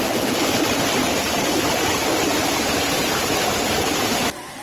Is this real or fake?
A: real